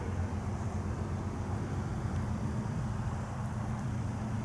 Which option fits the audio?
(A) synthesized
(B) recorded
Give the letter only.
A